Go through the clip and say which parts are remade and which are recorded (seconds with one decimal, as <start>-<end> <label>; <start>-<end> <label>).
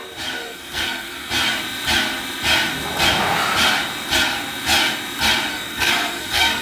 0.0-0.4 recorded; 0.4-1.3 remade; 1.3-5.5 recorded; 5.5-6.6 remade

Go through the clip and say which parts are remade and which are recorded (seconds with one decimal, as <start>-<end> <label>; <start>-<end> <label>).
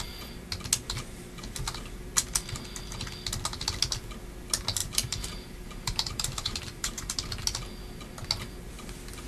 0.0-4.8 recorded; 4.8-7.1 remade; 7.1-9.3 recorded